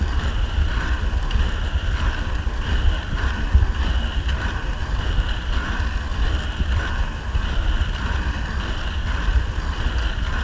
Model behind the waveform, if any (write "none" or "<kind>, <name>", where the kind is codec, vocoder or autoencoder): vocoder, BigVGAN v2